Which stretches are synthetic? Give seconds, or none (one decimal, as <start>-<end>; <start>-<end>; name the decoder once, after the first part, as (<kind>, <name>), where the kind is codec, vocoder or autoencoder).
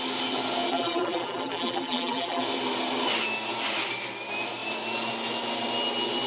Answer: 0.7-2.4 (vocoder, BigVGAN v2)